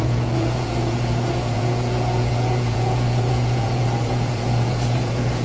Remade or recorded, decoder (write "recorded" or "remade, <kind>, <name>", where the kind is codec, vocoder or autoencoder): remade, vocoder, Vocos